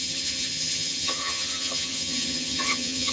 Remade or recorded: remade